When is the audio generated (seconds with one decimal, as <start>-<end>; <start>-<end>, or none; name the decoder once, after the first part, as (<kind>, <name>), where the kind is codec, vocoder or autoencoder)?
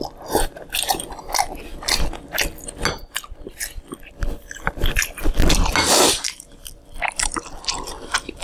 3.0-5.7 (vocoder, BigVGAN v2); 6.6-8.4